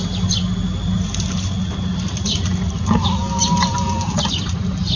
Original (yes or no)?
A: yes